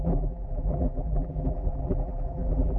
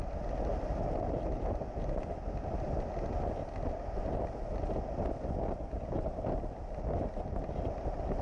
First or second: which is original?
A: second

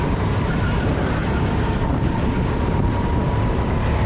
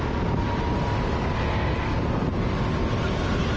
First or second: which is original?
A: second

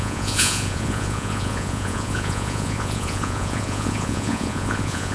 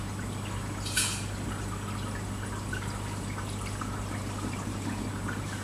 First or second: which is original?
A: second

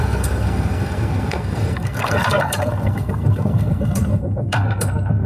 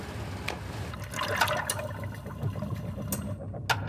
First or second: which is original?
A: second